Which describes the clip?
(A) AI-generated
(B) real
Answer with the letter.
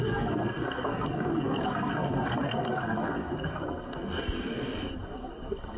A